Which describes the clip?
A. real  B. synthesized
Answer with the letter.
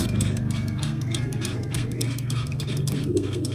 B